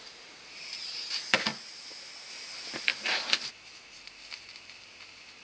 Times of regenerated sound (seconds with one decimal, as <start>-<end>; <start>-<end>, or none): 0.0-1.5; 2.3-2.9; 3.5-5.4

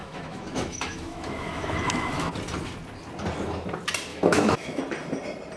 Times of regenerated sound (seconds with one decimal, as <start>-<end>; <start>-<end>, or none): 0.0-2.3; 4.1-4.8

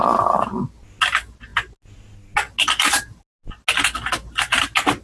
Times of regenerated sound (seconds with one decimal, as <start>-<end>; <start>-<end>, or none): none